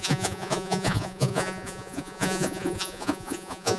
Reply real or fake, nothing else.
fake